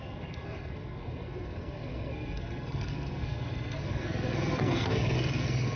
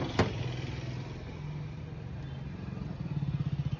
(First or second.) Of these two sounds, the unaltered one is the second